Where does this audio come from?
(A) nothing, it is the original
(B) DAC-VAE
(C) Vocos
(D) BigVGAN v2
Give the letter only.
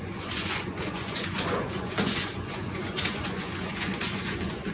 C